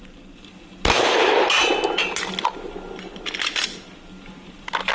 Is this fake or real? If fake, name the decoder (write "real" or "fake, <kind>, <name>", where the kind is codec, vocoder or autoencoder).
real